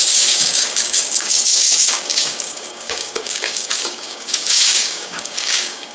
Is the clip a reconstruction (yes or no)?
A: yes